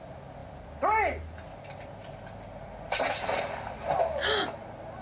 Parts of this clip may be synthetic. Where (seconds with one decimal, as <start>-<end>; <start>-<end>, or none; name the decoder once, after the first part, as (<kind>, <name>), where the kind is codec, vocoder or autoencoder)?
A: none